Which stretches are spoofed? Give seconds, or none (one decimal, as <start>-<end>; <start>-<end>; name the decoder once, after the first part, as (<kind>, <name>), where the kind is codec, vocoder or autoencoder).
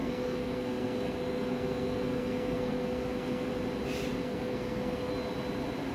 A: 0.0-3.5 (codec, SNAC); 4.2-5.1